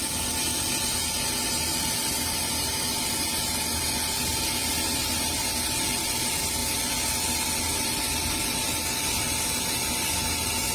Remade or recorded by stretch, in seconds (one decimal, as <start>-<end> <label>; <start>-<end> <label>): 0.0-10.7 recorded